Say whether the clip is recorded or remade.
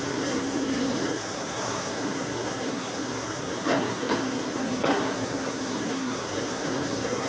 remade